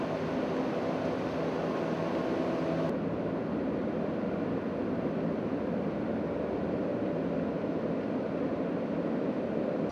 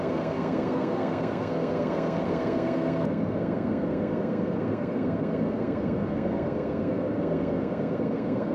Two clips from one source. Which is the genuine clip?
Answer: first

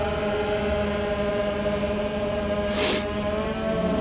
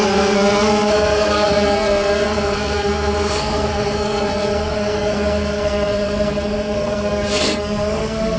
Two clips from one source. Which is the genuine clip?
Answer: first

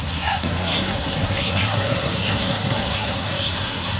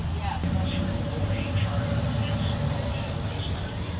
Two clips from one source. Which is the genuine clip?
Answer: second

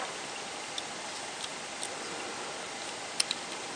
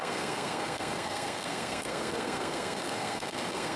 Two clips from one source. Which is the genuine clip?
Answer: first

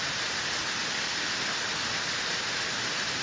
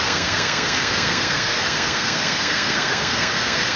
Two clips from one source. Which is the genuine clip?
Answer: first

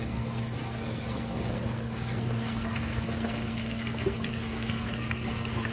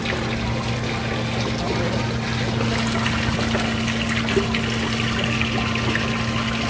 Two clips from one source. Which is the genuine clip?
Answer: second